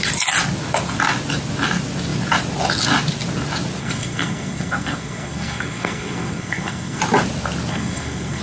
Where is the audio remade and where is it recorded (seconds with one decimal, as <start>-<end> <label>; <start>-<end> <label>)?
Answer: 0.0-3.8 recorded; 3.8-7.0 remade; 7.0-7.7 recorded; 7.7-8.4 remade